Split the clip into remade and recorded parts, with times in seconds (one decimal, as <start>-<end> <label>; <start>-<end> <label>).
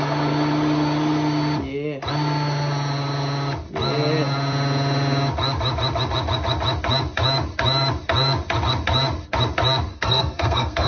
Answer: 0.0-9.9 recorded; 9.9-10.9 remade